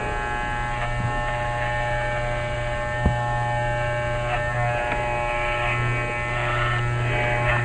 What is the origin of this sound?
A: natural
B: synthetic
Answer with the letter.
A